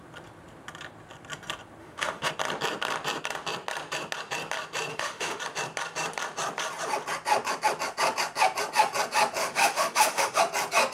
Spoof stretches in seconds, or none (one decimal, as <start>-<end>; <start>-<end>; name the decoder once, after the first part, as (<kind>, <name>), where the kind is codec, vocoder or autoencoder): 1.8-2.3 (autoencoder, DAC-VAE); 4.9-5.4; 9.4-10.4